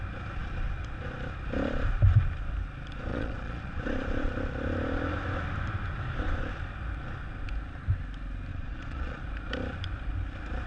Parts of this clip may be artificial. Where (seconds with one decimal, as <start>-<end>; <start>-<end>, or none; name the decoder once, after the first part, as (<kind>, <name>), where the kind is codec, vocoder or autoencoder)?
3.1-3.8 (vocoder, Vocos); 8.5-9.2